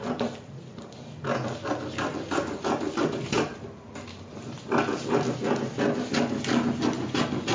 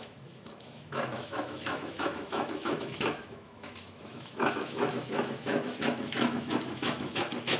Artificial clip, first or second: second